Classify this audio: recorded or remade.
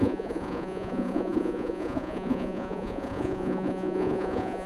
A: remade